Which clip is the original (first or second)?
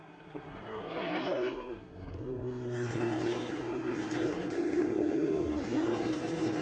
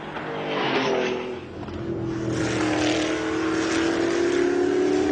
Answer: second